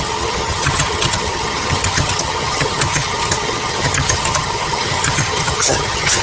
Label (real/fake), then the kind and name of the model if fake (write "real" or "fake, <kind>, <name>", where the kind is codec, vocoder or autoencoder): fake, vocoder, HiFi-GAN